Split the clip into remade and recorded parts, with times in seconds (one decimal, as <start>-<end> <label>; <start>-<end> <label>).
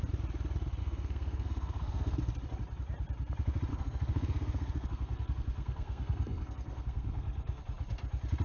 0.0-0.8 recorded; 0.8-2.2 remade; 2.2-3.7 recorded; 3.7-7.6 remade; 7.6-8.4 recorded